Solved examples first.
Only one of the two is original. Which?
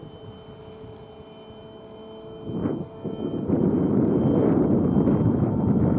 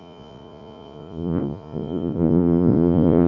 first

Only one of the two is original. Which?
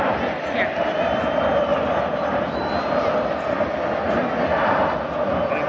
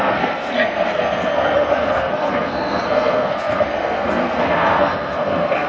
first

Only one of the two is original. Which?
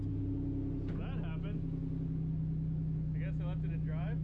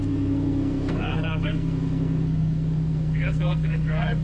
first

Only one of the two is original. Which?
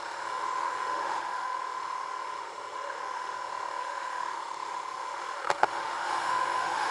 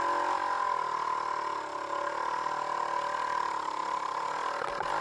second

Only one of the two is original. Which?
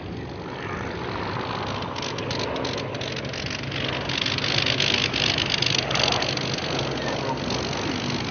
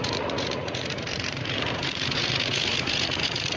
first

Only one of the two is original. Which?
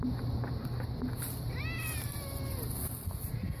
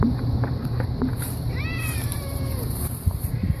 first